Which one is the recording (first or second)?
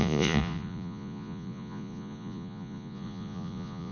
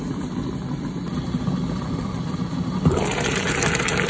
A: second